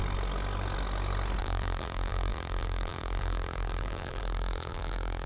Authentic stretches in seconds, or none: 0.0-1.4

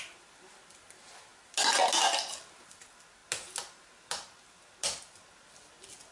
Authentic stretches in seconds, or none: 0.0-6.1

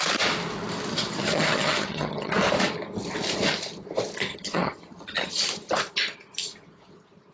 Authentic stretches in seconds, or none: 0.0-0.9; 2.3-4.3; 5.4-7.3

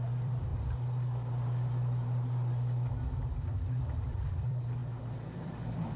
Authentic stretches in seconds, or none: 0.5-4.1; 4.8-5.3

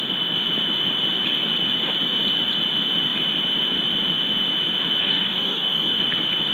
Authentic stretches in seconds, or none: 0.0-5.0; 6.0-6.5